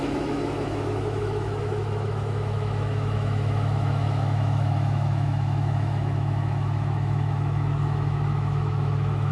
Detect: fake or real fake